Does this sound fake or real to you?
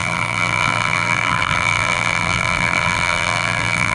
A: fake